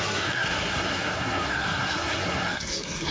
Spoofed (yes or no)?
yes